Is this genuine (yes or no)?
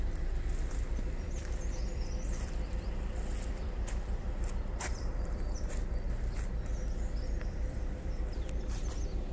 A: no